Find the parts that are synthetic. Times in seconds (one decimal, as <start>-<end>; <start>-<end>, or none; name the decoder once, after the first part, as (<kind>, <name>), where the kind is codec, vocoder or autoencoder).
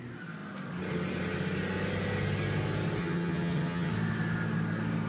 3.0-3.9 (vocoder, HiFi-GAN)